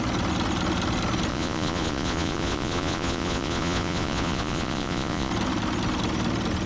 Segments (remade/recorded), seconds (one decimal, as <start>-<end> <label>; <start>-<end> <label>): 0.0-1.3 recorded; 1.3-5.3 remade; 5.3-6.7 recorded

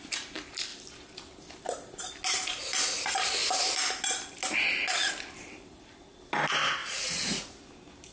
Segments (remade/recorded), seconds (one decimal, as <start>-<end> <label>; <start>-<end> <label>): 0.0-6.8 recorded; 6.8-7.5 remade; 7.5-8.1 recorded

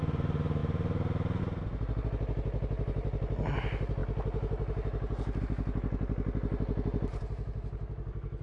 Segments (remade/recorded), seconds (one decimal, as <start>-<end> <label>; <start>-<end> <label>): 0.0-8.4 recorded

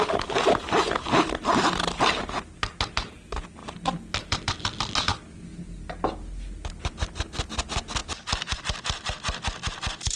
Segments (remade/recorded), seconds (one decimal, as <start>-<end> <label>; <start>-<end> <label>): 0.0-3.6 recorded; 3.6-4.9 remade; 4.9-5.5 recorded; 5.5-6.1 remade; 6.1-8.0 recorded; 8.0-8.6 remade; 8.6-10.2 recorded

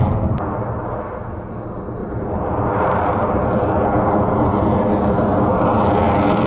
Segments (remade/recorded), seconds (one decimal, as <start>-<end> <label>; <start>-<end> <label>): 0.0-2.0 recorded; 2.0-3.4 remade; 3.4-6.5 recorded